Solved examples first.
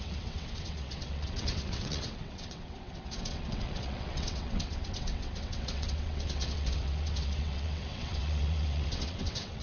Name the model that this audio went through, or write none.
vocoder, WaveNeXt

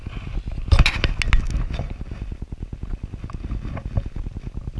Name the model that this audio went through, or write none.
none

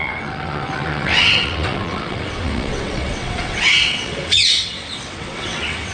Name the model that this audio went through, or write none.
vocoder, WaveNeXt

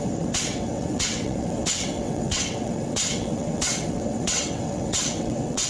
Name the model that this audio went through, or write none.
vocoder, WaveNeXt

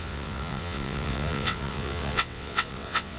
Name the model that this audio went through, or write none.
vocoder, WaveNeXt